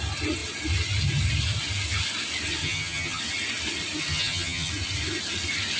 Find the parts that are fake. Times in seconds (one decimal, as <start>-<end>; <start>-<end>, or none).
2.6-3.2; 4.1-4.7